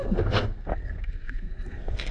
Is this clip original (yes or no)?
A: no